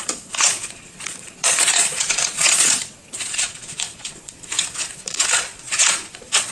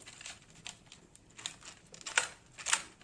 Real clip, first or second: second